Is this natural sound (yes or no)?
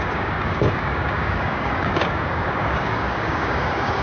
no